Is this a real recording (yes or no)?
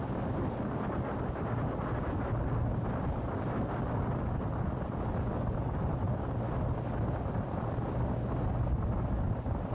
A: yes